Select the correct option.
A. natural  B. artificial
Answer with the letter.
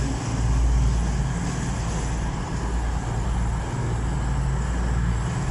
A